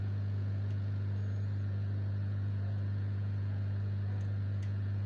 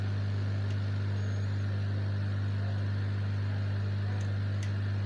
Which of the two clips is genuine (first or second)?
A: second